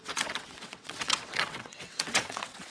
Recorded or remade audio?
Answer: remade